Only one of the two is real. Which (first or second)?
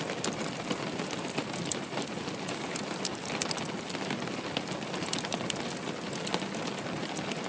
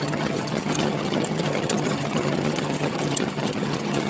first